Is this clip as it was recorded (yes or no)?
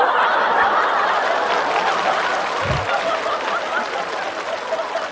yes